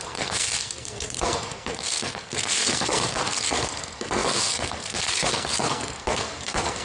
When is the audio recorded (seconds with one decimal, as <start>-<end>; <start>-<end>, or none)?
none